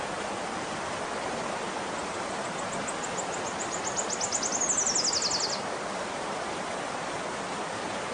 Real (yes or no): yes